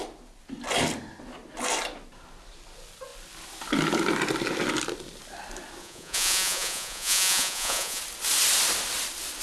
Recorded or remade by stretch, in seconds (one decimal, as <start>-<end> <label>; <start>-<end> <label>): 0.0-5.8 recorded; 5.8-8.0 remade; 8.0-9.4 recorded